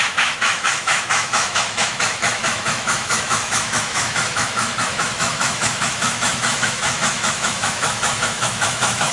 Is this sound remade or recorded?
remade